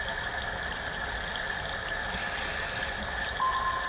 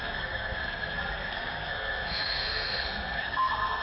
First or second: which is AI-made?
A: second